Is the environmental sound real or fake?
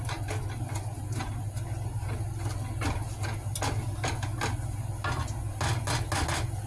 real